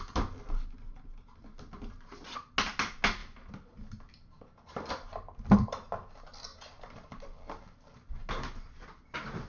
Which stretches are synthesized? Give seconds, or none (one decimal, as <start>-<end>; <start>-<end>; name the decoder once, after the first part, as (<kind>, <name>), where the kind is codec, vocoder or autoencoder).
none

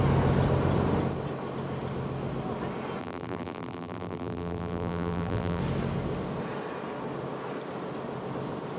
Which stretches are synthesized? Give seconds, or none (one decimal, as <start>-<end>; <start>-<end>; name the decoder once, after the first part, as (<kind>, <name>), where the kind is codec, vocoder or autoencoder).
3.0-5.6 (vocoder, BigVGAN v2)